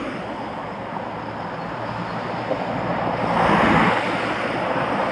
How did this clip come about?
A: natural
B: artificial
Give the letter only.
A